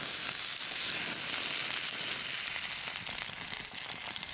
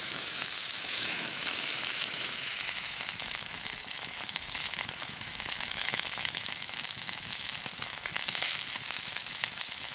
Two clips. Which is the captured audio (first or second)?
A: first